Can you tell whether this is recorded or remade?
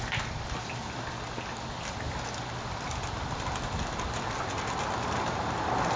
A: recorded